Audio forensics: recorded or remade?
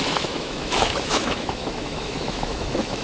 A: remade